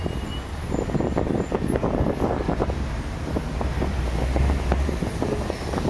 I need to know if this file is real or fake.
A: real